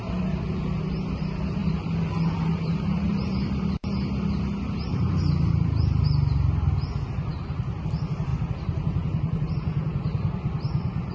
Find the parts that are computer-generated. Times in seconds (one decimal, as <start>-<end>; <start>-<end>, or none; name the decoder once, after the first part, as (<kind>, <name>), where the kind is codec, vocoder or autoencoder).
1.6-3.7 (vocoder, BigVGAN v2); 4.9-6.0; 8.3-9.5